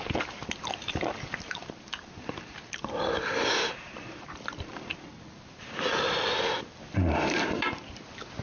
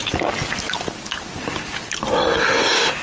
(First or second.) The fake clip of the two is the first